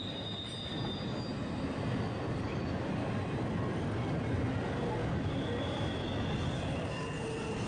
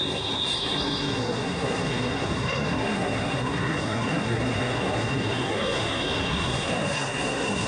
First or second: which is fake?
second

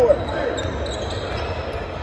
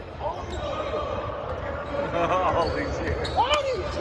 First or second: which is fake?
second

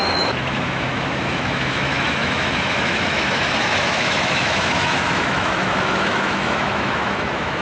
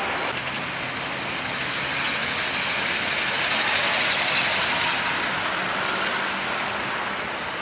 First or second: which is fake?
first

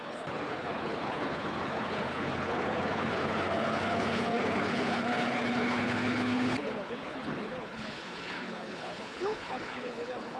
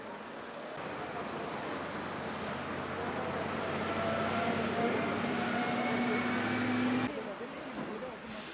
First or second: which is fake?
first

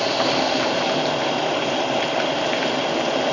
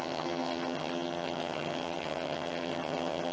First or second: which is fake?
second